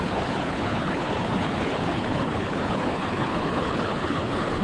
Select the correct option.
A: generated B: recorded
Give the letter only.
A